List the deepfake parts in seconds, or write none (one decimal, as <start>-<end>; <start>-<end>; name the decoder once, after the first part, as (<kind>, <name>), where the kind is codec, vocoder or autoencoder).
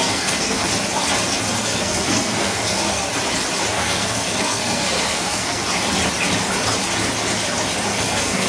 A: 0.0-0.7 (codec, SNAC); 1.6-3.1; 3.7-5.6; 7.9-8.5